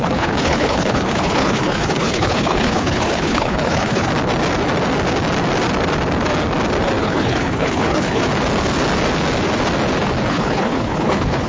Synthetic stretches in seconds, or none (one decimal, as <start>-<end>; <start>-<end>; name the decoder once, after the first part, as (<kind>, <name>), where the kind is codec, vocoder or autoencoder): 0.0-4.1 (codec, HILCodec); 7.0-8.2; 10.3-11.5